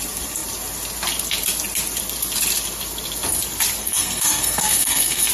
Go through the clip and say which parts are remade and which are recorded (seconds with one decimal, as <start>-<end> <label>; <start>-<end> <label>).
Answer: 0.0-3.8 recorded; 3.8-5.3 remade